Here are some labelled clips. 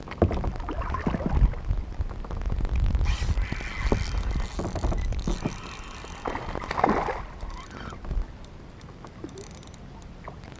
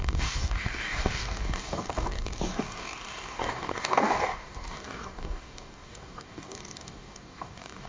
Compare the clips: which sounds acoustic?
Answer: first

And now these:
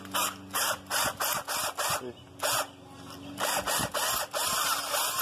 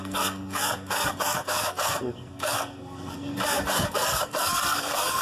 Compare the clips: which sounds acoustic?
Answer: first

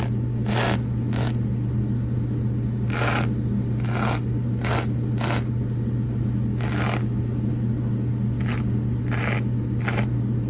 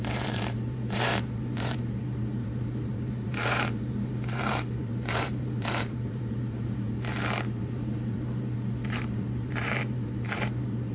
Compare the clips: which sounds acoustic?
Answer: first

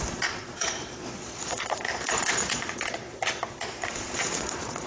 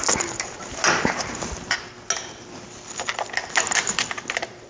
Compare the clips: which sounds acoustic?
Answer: second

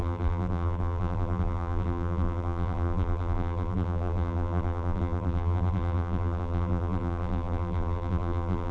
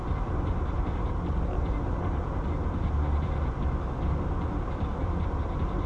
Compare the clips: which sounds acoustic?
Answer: second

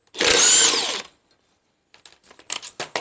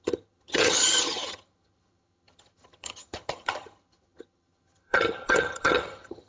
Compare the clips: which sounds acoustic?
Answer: first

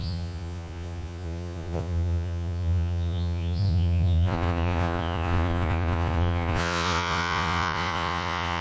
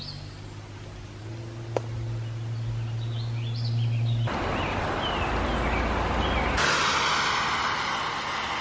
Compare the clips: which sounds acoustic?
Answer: second